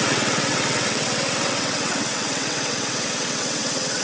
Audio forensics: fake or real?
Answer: fake